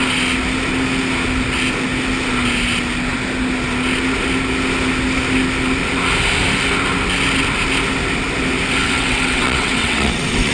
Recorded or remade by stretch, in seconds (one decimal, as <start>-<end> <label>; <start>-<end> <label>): 0.0-8.8 recorded; 8.8-10.5 remade